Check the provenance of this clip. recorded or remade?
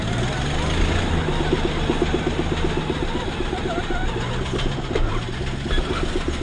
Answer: recorded